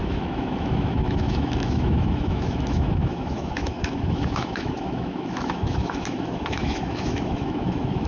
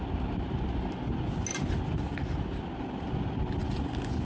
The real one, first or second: second